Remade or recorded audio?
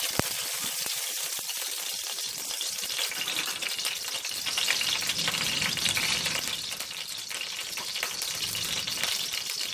remade